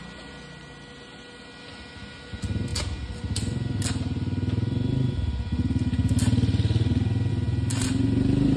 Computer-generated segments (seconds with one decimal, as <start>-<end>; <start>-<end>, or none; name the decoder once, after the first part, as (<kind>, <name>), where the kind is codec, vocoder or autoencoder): none